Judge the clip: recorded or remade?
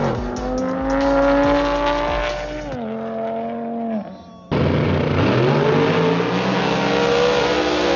recorded